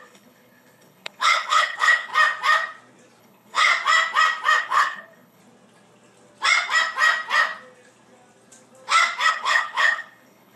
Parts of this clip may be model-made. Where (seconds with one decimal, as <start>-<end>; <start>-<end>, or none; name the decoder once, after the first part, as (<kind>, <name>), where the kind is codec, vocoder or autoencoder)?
0.0-2.1 (codec, HILCodec); 3.2-3.7; 4.6-5.4; 9.3-10.6